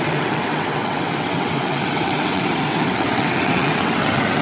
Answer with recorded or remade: remade